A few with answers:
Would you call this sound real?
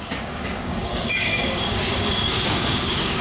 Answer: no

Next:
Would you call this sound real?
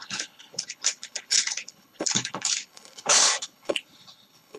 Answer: no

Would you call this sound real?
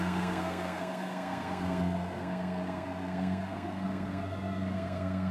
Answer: no